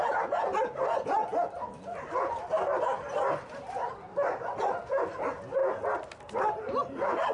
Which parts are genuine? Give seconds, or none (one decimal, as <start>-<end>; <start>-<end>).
0.0-7.3